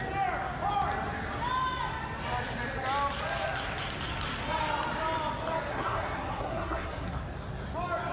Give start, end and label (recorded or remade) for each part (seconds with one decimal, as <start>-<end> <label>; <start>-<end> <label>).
0.0-5.7 recorded; 5.7-7.2 remade; 7.2-8.1 recorded